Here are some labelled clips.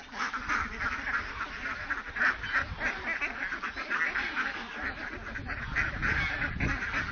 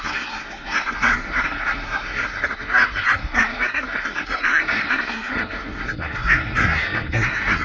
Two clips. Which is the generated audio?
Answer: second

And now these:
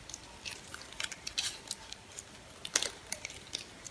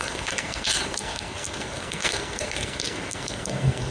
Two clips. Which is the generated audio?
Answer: second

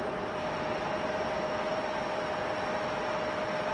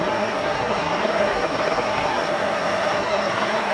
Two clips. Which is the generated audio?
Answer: second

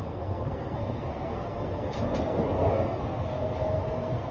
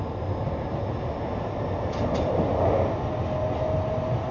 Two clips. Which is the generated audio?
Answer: first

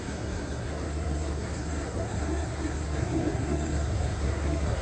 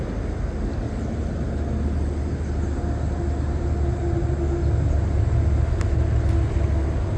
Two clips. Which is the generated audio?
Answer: first